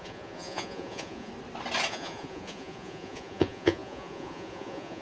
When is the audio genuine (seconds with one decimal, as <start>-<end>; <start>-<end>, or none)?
1.3-1.9